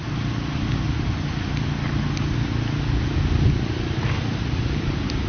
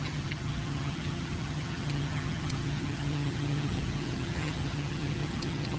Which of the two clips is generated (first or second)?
second